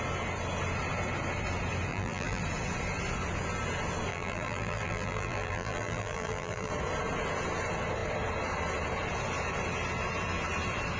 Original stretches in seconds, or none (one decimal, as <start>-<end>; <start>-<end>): 0.0-1.9; 2.4-4.1; 6.7-11.0